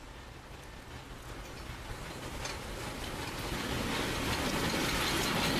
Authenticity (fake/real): real